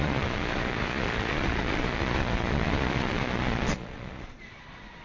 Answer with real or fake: fake